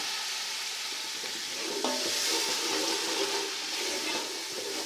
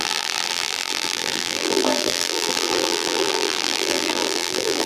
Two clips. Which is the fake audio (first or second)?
second